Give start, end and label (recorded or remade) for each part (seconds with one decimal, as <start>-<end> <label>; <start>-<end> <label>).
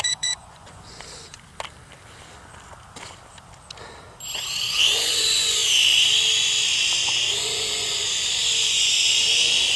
0.0-1.5 remade; 1.5-4.5 recorded; 4.5-5.6 remade; 5.6-7.0 recorded; 7.0-9.8 remade